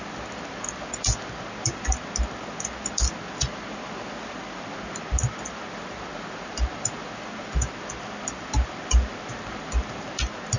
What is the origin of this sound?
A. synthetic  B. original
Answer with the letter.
B